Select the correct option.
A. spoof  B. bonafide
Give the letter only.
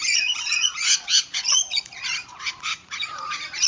A